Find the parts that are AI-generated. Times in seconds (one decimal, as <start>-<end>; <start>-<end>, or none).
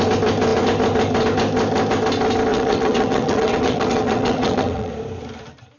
2.5-4.9